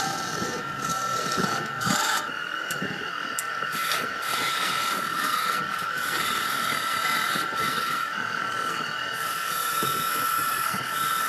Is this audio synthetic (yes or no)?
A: yes